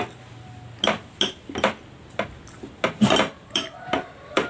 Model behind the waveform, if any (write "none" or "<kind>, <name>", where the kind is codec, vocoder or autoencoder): none